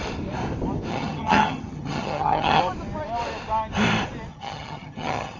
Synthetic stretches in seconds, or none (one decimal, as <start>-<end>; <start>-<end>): 0.9-2.6; 4.3-5.4